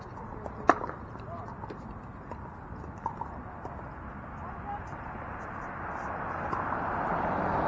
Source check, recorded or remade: recorded